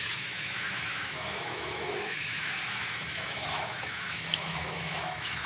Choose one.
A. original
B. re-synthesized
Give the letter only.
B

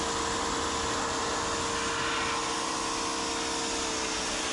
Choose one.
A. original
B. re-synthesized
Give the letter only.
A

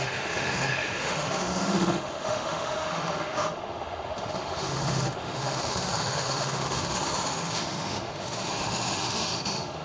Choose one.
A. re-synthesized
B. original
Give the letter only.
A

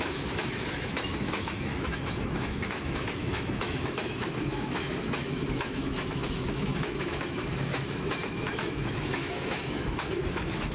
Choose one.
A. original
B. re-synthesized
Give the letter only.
B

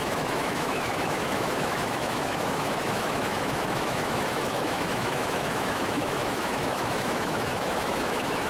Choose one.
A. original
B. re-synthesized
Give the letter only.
B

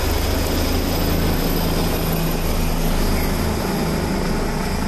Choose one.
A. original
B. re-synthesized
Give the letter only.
A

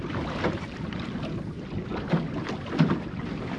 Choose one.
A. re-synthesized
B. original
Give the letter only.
B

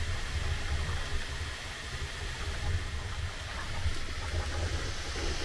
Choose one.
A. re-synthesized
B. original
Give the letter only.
B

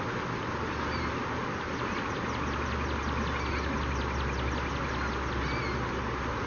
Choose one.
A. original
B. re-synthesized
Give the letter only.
A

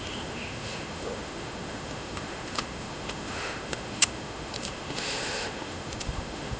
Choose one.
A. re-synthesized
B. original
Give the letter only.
A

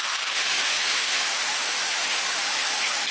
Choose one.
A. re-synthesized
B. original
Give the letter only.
A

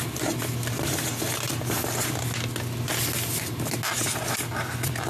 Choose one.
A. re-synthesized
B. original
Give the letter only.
B